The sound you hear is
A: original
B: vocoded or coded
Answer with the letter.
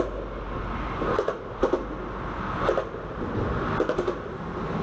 A